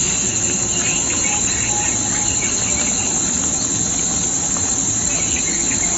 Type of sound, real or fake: real